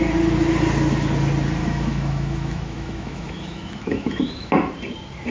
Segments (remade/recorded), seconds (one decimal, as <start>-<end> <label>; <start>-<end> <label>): 0.0-1.6 recorded; 1.6-4.5 remade; 4.5-5.3 recorded